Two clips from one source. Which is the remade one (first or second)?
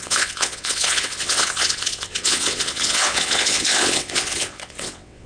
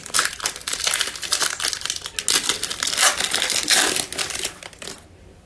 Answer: first